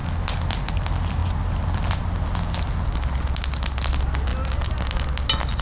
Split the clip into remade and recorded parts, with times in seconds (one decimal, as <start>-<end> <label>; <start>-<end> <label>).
0.0-5.6 recorded